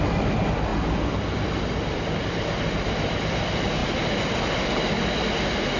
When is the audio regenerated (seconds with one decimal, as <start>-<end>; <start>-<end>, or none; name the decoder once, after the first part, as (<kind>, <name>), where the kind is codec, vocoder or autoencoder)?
none